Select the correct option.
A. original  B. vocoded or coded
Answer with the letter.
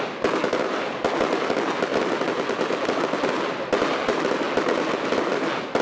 A